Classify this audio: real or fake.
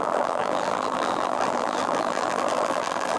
fake